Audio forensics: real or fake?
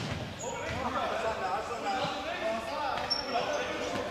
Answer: real